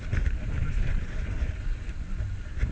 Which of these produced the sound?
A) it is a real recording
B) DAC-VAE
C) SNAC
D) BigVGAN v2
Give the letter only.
A